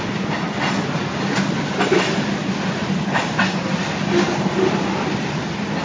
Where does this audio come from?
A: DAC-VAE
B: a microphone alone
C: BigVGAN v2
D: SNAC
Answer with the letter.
B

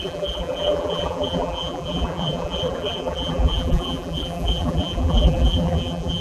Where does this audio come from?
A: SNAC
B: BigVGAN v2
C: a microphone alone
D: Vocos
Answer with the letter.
B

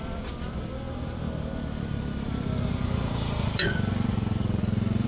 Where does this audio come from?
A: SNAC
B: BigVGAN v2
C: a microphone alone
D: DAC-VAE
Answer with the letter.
B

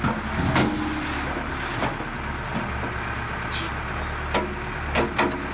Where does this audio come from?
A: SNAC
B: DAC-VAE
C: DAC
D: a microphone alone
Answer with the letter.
D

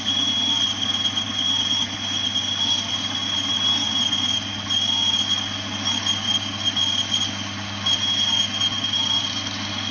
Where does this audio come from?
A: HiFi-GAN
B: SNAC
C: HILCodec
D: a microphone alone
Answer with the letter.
D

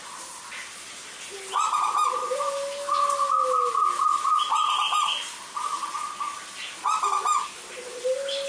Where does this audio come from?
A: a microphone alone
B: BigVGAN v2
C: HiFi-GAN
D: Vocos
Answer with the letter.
A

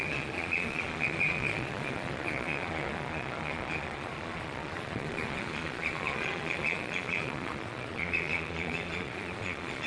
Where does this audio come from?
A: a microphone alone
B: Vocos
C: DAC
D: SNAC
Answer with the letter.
B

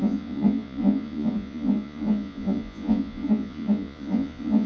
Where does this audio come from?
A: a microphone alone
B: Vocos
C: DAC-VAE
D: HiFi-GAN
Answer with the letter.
B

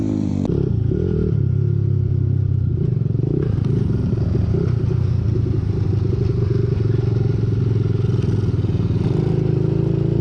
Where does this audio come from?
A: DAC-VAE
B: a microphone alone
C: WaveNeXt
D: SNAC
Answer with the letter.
B